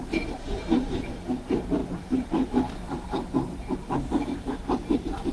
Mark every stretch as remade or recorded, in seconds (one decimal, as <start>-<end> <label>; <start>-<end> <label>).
0.0-5.3 recorded